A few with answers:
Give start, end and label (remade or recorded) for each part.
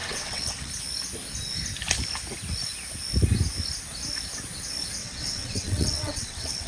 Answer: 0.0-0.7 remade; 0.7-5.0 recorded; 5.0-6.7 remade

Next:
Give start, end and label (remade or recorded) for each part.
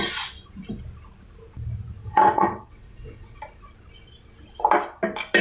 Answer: 0.0-2.0 recorded; 2.0-3.4 remade; 3.4-5.4 recorded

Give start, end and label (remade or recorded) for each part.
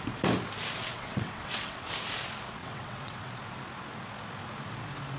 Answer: 0.0-0.8 recorded; 0.8-1.9 remade; 1.9-2.6 recorded; 2.6-3.3 remade; 3.3-5.2 recorded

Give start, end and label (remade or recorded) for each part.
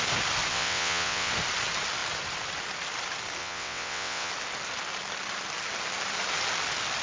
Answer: 0.0-0.5 recorded; 0.5-1.3 remade; 1.3-3.4 recorded; 3.4-4.3 remade; 4.3-7.0 recorded